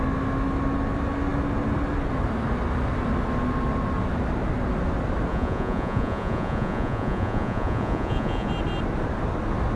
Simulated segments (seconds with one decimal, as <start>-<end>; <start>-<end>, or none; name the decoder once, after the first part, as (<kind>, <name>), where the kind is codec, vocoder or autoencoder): 5.3-8.5 (vocoder, Vocos)